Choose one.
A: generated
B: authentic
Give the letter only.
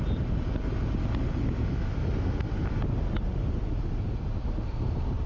B